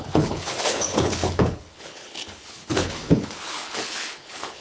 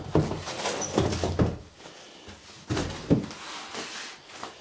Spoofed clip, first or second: first